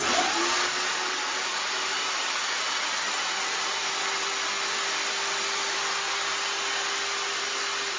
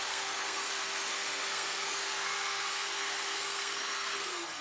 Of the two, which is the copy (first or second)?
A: second